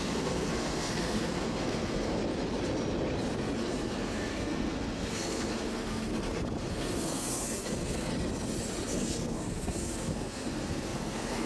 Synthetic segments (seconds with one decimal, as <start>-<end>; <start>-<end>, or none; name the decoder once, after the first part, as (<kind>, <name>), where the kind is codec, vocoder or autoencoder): 0.0-2.2 (codec, SNAC); 3.6-6.1; 6.7-8.1; 8.9-11.5